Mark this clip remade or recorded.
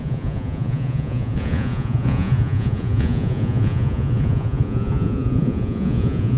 remade